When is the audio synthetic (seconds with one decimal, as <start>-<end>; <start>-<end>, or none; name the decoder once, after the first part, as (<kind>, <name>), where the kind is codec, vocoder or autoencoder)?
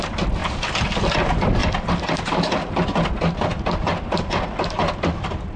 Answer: none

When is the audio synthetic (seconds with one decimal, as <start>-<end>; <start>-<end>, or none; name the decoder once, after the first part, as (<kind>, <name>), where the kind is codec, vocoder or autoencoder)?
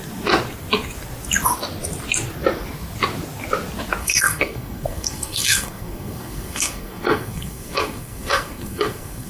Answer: 4.0-9.3 (codec, SNAC)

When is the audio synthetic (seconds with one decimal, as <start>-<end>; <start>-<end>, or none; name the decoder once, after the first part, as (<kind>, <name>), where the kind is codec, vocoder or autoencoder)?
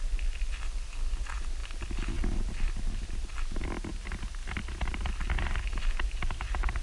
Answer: none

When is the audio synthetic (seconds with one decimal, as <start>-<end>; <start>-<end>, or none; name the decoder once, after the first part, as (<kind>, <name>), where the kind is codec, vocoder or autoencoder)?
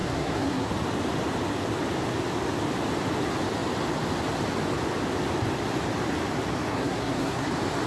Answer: 0.0-0.7 (codec, SNAC); 6.7-7.5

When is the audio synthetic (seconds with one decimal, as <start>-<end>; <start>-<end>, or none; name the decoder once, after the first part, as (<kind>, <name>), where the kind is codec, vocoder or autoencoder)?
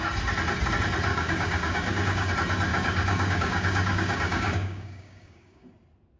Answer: 1.1-2.3 (codec, DAC); 2.7-5.7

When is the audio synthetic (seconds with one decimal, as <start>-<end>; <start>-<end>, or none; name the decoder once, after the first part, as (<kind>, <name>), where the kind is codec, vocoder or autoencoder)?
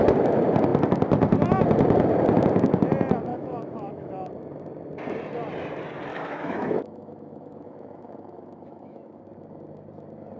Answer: 3.3-4.1 (autoencoder, DAC-VAE); 6.1-9.2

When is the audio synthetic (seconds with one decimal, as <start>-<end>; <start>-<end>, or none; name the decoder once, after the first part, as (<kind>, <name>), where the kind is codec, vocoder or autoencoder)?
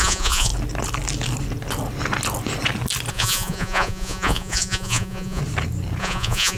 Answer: 0.0-0.5 (vocoder, Vocos); 3.1-5.4; 6.0-6.6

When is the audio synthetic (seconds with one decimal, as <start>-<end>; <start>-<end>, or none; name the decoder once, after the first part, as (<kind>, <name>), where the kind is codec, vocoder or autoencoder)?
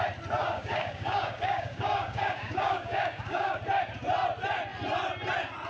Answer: 0.4-3.6 (codec, DAC)